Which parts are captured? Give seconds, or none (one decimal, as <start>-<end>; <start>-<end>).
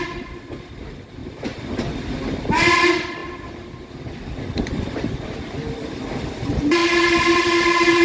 0.0-8.0